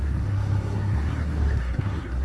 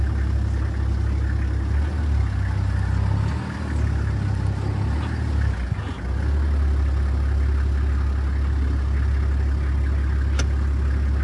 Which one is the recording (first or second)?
second